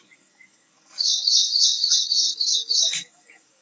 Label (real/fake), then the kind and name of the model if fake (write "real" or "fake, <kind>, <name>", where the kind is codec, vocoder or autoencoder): fake, codec, DAC